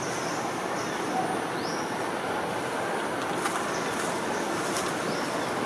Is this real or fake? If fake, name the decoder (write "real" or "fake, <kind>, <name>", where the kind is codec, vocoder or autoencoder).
real